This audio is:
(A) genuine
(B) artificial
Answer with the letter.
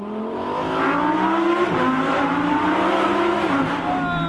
A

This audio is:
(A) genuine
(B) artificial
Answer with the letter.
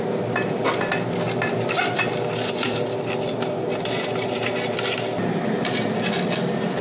A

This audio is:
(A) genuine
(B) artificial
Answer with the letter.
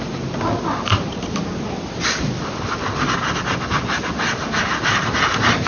A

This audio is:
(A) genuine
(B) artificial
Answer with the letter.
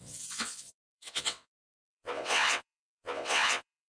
B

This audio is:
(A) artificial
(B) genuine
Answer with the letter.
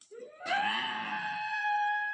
A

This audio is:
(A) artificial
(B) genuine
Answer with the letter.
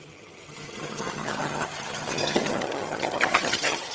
A